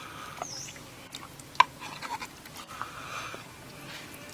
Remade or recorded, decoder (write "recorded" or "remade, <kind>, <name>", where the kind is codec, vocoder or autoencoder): recorded